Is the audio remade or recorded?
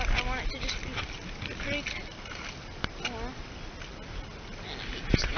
recorded